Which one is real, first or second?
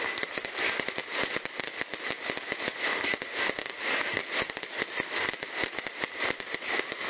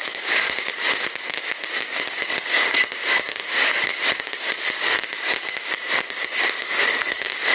first